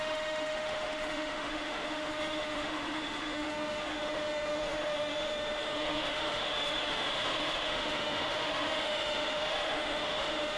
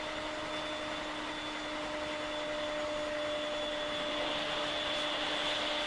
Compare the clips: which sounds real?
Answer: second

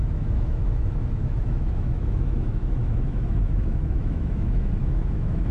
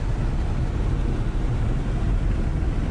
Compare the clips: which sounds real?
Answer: second